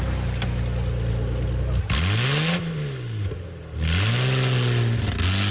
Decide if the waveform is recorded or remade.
recorded